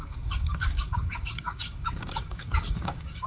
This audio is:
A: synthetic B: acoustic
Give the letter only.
A